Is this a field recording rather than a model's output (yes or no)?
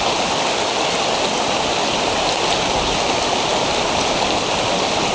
yes